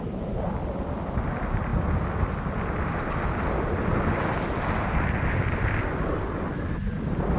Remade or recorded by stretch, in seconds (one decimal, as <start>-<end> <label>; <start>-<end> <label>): 0.0-7.4 recorded